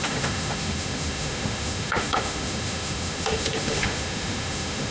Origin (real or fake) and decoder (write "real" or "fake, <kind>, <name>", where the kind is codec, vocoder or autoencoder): fake, autoencoder, DAC-VAE